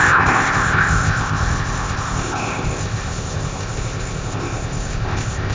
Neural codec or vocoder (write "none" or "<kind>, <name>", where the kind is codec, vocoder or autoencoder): codec, ZipCodec